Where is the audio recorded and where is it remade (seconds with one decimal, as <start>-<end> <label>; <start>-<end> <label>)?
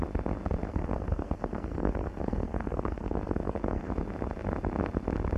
0.0-0.7 recorded; 0.7-3.9 remade; 3.9-5.4 recorded